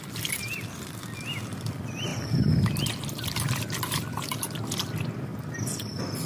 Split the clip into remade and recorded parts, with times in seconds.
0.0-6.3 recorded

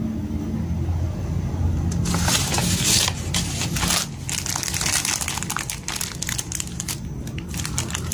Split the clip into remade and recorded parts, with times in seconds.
0.0-8.1 recorded

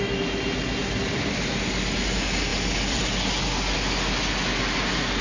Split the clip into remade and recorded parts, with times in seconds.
0.0-0.8 recorded; 0.8-1.5 remade; 1.5-2.5 recorded; 2.5-3.0 remade; 3.0-5.2 recorded